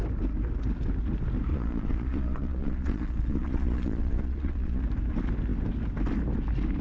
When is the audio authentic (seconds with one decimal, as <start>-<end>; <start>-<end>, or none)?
0.0-1.5; 4.8-6.8